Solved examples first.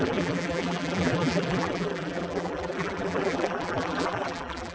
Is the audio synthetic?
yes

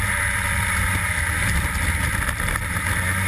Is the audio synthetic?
no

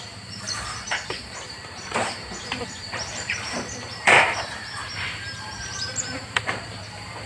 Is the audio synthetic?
yes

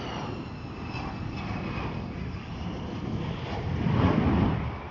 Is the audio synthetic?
no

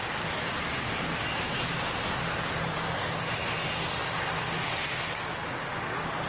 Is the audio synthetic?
no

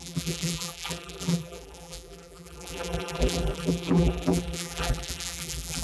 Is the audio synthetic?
yes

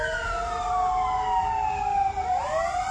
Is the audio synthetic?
no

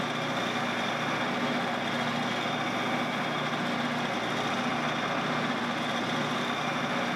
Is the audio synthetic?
no